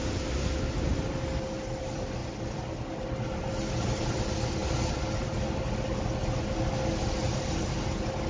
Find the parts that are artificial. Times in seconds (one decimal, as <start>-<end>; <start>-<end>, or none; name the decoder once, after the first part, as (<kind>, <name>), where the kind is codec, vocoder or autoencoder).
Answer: none